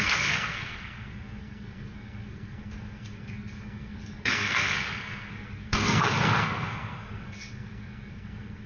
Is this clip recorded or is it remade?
remade